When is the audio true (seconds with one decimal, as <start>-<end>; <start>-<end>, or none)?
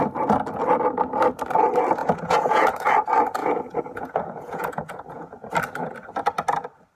0.0-2.0; 2.7-3.4; 5.5-6.9